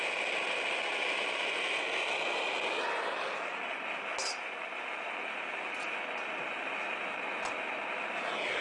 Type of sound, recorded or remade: recorded